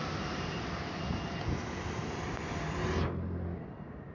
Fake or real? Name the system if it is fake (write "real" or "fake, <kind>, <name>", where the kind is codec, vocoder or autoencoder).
real